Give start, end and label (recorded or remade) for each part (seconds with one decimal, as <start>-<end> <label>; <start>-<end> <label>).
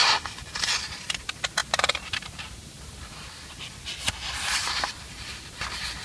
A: 0.0-1.6 recorded; 1.6-2.8 remade; 2.8-4.6 recorded; 4.6-5.6 remade; 5.6-6.0 recorded